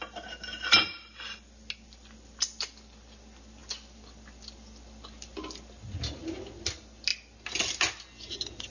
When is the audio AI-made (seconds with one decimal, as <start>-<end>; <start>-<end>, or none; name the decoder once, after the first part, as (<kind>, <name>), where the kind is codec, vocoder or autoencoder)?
none

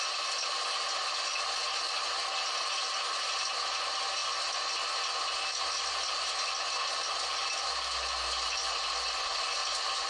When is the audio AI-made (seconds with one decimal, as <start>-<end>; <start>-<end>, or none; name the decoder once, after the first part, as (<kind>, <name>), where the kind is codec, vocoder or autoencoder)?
none

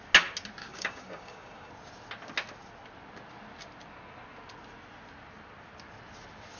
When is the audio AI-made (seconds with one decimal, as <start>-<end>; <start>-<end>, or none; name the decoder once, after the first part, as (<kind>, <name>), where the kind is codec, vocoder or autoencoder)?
0.6-1.7 (codec, DAC)

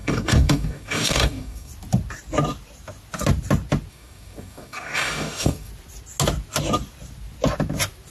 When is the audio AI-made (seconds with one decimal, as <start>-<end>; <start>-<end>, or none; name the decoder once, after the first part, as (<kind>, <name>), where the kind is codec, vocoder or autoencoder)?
0.0-1.7 (codec, DAC); 3.9-5.7

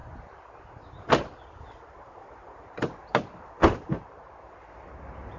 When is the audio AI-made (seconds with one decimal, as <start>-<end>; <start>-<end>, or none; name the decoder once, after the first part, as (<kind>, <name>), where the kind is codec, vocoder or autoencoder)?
none

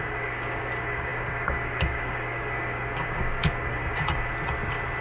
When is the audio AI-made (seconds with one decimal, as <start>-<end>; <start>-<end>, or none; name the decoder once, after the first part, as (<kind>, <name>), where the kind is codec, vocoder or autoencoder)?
0.0-4.3 (codec, DAC)

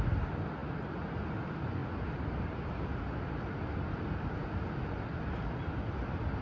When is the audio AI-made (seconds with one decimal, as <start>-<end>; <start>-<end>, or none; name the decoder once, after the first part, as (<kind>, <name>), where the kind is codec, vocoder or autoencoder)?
none

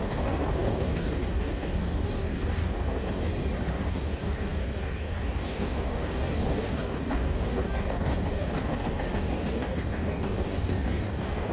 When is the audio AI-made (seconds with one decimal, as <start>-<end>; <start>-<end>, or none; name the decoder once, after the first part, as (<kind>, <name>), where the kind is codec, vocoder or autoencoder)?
0.0-3.2 (codec, DAC); 3.7-11.5